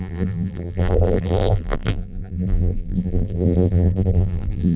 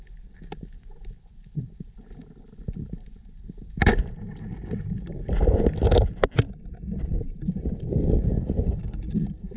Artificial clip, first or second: first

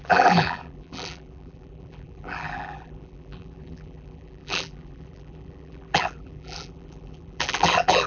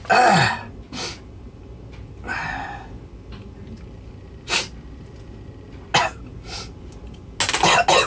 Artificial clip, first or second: first